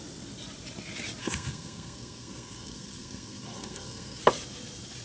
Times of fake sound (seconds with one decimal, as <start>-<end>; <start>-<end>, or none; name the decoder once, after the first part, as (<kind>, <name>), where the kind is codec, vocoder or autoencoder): 1.2-4.2 (codec, SNAC)